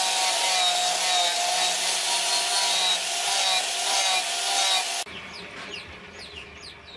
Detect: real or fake real